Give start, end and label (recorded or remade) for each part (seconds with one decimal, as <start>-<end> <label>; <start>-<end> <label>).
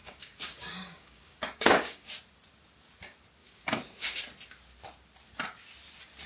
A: 0.0-2.1 remade; 2.1-3.4 recorded; 3.4-4.2 remade; 4.2-6.3 recorded